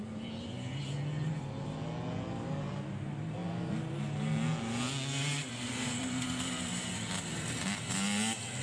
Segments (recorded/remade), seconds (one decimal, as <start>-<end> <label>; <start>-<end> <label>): 0.0-8.6 recorded